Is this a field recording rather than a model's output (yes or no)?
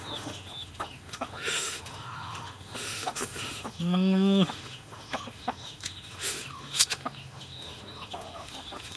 no